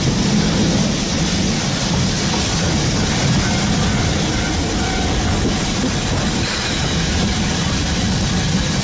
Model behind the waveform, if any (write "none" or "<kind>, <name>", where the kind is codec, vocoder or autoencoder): none